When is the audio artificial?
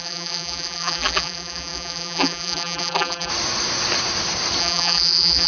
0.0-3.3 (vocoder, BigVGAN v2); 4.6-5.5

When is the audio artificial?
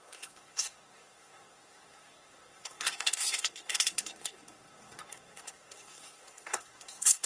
0.0-7.3 (codec, SNAC)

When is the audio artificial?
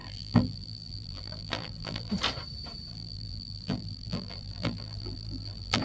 0.0-2.1 (vocoder, BigVGAN v2); 2.9-5.8